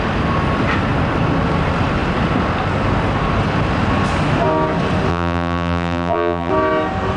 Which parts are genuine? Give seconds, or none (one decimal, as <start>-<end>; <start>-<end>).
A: 0.0-5.1; 6.5-7.2